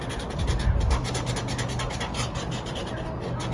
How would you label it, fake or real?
real